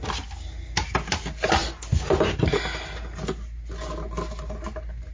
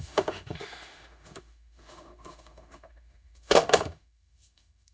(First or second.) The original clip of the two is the first